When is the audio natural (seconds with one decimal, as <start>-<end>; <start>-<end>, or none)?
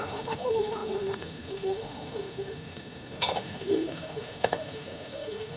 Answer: none